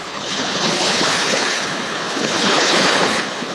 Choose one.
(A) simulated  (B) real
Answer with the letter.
A